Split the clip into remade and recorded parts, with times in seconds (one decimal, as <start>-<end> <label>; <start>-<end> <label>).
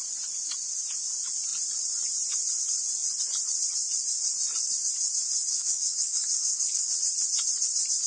0.0-5.5 recorded; 5.5-6.9 remade; 6.9-8.1 recorded